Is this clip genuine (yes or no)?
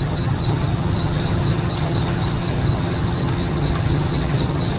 no